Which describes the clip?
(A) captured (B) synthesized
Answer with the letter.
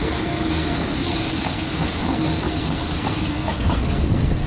B